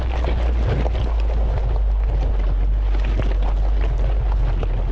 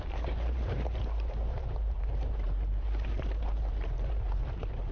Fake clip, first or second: second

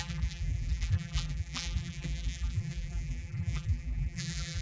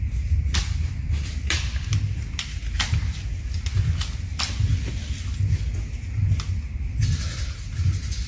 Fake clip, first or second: first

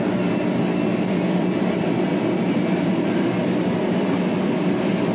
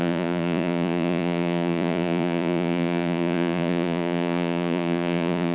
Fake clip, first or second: second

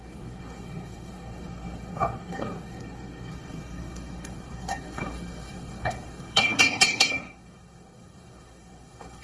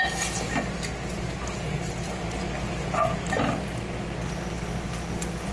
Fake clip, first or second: first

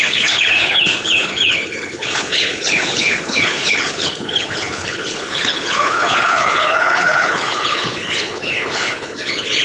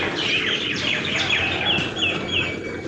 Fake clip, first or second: first